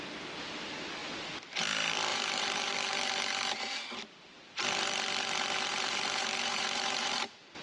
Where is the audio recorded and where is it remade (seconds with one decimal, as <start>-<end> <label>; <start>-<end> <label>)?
0.0-2.1 recorded; 2.1-2.7 remade; 2.7-5.7 recorded; 5.7-7.6 remade

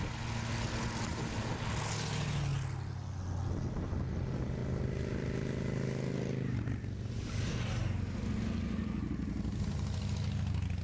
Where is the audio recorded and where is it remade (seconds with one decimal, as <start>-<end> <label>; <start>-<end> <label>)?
0.0-1.1 recorded; 1.1-1.6 remade; 1.6-10.8 recorded

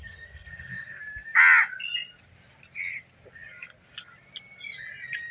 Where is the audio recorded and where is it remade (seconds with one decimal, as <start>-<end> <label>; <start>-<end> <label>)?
0.0-1.0 remade; 1.0-5.3 recorded

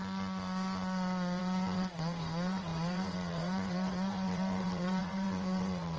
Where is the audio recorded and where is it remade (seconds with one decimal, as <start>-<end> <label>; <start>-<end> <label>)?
0.0-1.4 recorded; 1.4-6.0 remade

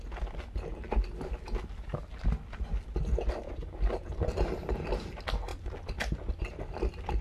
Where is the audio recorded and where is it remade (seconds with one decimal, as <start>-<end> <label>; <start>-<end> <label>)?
0.0-5.5 recorded; 5.5-6.3 remade; 6.3-7.2 recorded